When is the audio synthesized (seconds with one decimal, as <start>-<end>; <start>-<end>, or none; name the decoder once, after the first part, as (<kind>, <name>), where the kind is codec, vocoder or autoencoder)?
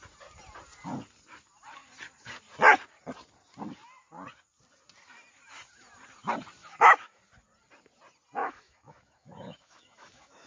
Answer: 6.6-7.2 (autoencoder, DAC-VAE); 8.4-10.5